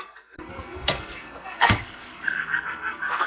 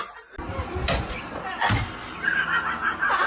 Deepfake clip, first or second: first